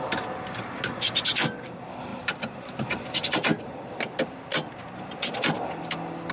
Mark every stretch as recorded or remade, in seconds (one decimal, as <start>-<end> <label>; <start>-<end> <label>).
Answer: 0.0-6.3 recorded